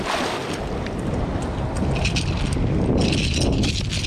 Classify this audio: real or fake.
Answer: real